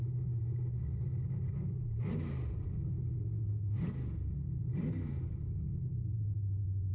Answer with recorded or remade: recorded